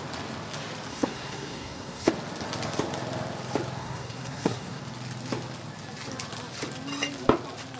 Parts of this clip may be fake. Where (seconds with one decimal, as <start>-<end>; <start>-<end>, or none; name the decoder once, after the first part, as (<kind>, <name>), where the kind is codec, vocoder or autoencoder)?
0.9-2.1 (codec, SNAC); 3.8-4.8